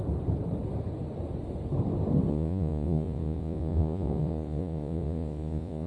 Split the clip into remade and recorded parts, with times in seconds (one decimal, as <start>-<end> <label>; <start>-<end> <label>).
0.0-2.3 recorded; 2.3-5.9 remade